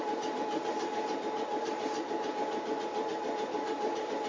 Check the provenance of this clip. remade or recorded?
recorded